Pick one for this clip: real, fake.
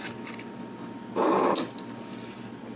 real